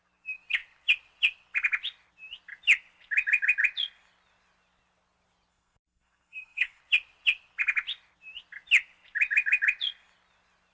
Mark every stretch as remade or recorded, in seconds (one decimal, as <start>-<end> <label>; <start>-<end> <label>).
0.0-5.5 recorded; 5.5-6.8 remade; 6.8-10.7 recorded